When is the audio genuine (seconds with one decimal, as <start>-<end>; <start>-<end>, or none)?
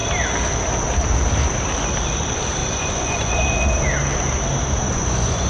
0.0-2.6; 3.4-4.9